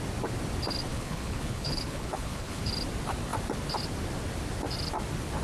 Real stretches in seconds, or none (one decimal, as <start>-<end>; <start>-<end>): 0.0-0.9; 2.7-5.4